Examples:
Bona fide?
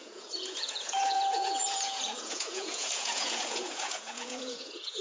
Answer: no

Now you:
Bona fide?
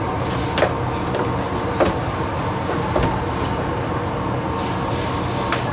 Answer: yes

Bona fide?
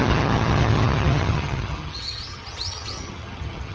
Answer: no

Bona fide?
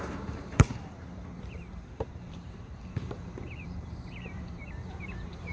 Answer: no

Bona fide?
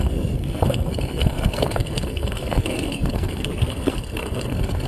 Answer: no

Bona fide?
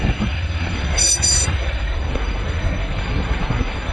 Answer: no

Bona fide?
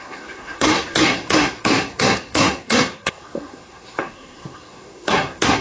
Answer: no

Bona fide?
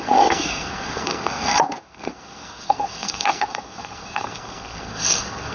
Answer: no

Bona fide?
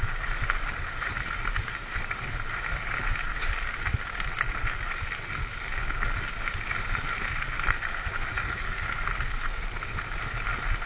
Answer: yes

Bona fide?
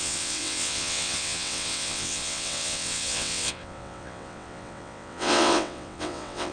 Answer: no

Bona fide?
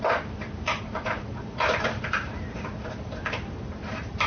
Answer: no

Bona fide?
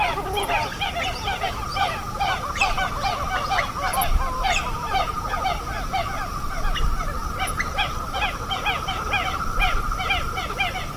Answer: yes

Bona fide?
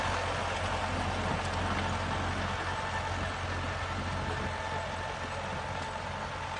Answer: yes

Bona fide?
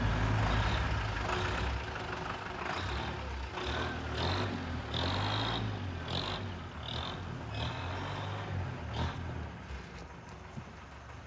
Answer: yes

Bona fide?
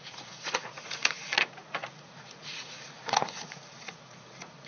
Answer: no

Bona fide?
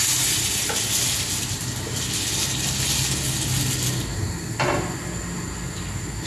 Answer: yes